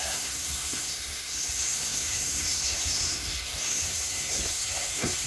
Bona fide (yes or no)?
no